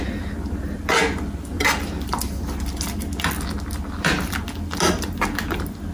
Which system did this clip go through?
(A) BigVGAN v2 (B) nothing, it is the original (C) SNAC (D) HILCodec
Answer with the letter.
B